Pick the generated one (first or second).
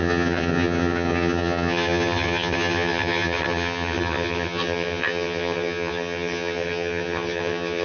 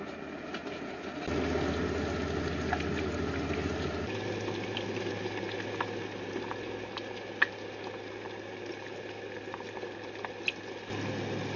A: first